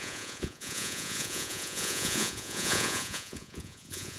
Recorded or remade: remade